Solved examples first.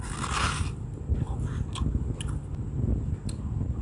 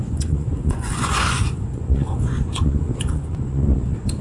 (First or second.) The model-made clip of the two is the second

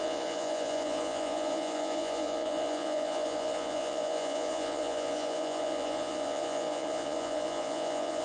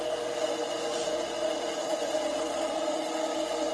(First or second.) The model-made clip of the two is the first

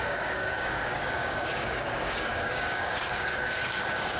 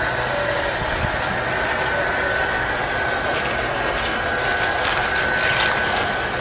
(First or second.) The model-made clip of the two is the first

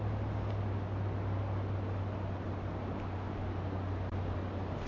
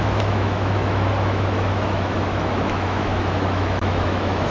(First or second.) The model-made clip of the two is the second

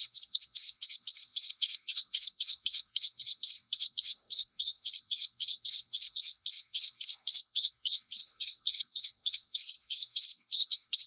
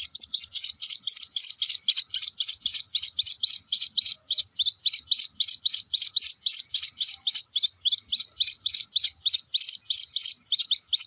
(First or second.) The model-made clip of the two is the first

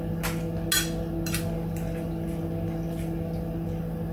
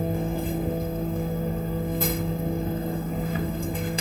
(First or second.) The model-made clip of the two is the second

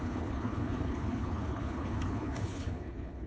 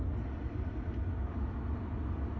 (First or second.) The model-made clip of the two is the first